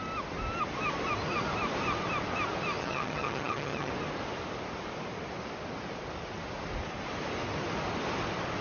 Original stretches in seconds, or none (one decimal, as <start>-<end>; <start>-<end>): 0.0-2.8; 3.9-8.6